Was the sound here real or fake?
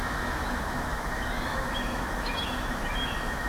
fake